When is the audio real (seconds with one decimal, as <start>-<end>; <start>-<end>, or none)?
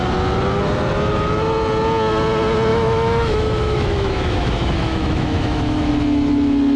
0.0-2.7; 5.9-6.8